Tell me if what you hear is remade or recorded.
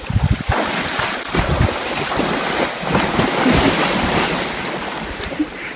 recorded